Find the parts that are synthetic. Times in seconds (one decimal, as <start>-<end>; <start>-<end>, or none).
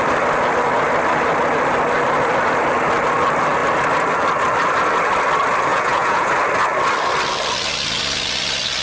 5.7-6.3